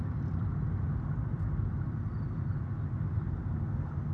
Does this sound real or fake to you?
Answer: real